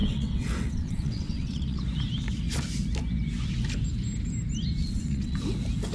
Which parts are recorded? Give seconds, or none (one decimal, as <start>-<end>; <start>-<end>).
1.8-4.8; 5.4-5.9